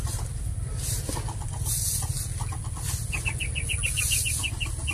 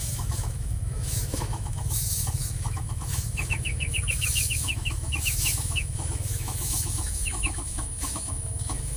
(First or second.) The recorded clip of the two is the first